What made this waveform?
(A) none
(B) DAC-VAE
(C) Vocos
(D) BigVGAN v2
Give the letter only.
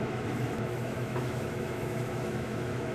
B